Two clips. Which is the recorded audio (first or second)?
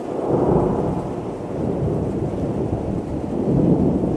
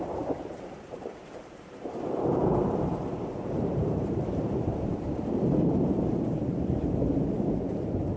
first